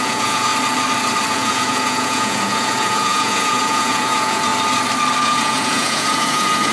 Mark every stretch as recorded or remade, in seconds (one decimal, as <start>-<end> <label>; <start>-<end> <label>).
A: 0.0-0.5 remade; 0.5-1.3 recorded; 1.3-4.5 remade; 4.5-5.2 recorded; 5.2-6.7 remade